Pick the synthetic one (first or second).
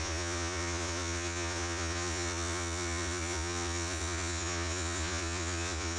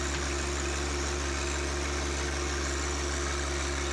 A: first